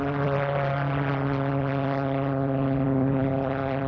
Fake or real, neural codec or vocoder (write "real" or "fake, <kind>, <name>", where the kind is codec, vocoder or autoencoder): real